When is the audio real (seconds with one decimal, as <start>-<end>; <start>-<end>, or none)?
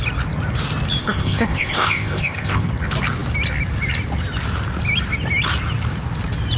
0.0-1.0; 2.7-6.6